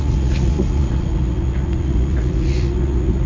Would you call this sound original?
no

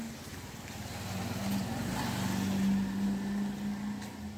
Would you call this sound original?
yes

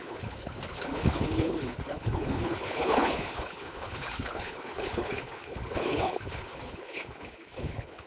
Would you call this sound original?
no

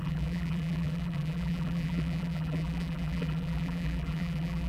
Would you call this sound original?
no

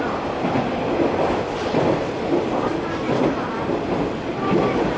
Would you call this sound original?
no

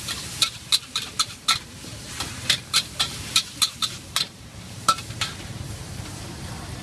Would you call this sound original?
no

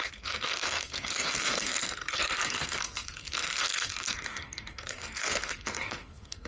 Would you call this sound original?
no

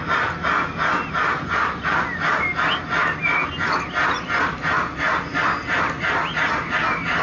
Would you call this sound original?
yes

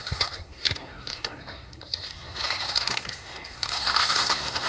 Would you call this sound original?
no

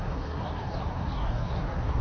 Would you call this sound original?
no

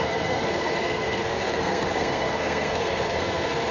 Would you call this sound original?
no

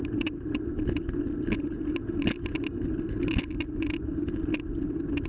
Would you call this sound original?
yes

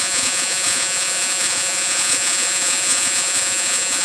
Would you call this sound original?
no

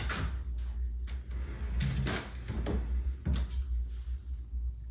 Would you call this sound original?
yes